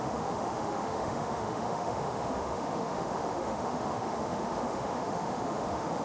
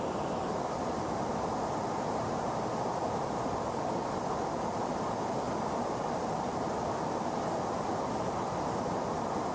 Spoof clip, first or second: first